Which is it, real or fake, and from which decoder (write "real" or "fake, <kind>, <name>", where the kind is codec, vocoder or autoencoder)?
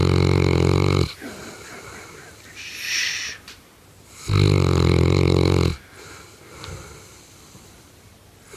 real